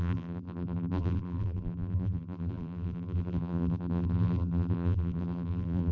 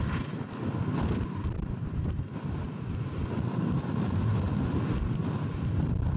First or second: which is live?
second